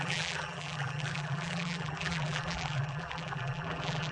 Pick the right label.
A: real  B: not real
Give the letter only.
B